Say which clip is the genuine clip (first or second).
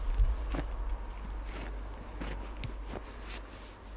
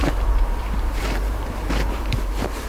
first